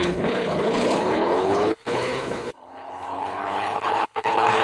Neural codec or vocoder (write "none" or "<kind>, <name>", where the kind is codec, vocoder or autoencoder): codec, HILCodec